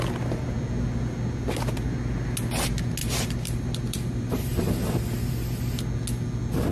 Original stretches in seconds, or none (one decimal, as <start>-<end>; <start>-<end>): 0.0-3.0; 5.3-6.7